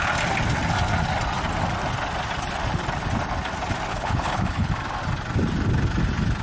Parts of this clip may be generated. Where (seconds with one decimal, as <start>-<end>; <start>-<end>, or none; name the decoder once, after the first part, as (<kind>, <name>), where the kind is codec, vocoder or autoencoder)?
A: 3.9-4.7 (codec, HILCodec)